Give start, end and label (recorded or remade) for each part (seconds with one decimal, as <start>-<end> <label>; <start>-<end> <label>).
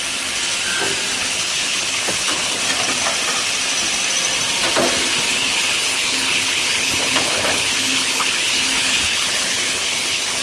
0.0-1.2 recorded; 1.2-2.6 remade; 2.6-5.3 recorded; 5.3-10.4 remade